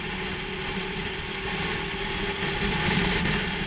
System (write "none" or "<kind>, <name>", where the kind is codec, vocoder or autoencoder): none